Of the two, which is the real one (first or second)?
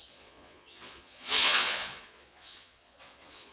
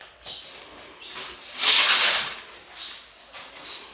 second